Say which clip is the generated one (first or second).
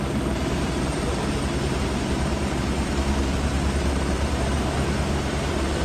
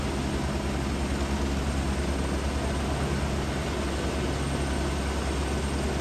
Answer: first